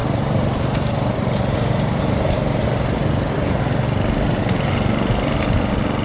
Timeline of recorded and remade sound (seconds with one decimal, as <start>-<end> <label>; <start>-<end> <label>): 0.0-3.6 remade; 3.6-6.0 recorded